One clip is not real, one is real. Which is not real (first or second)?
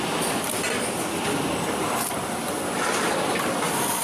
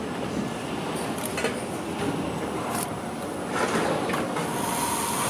first